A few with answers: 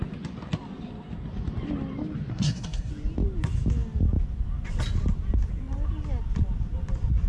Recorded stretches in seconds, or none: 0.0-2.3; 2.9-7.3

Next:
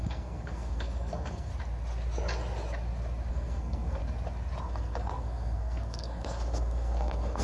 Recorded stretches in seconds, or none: 1.5-3.3; 4.0-4.6

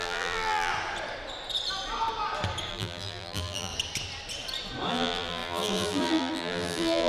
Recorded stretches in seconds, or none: 0.7-2.7; 3.7-4.9

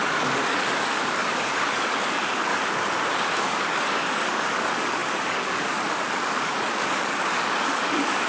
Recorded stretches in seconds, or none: 2.5-3.4

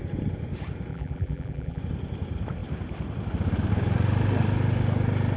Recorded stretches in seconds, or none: 0.0-0.9; 1.8-5.4